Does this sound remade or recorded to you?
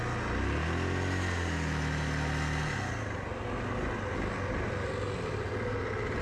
recorded